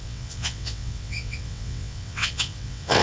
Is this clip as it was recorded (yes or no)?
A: no